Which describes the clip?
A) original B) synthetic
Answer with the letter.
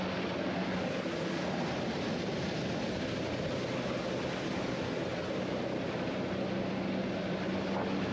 A